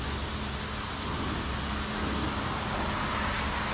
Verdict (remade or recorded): recorded